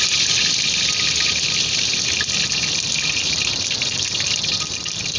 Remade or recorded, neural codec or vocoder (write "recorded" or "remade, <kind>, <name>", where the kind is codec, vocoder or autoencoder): recorded